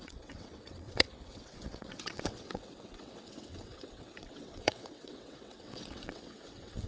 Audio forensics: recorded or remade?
remade